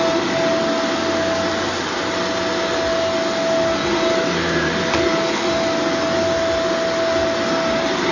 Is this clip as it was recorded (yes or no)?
yes